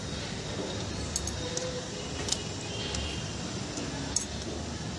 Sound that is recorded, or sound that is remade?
recorded